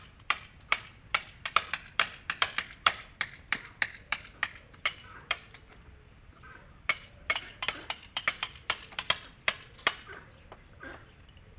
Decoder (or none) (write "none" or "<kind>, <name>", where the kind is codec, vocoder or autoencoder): vocoder, BigVGAN v2